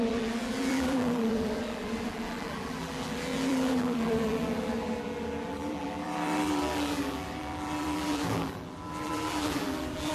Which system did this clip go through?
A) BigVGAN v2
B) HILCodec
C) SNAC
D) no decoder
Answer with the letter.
A